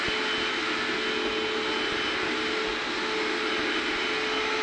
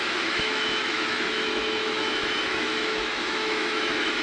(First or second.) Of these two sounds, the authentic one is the first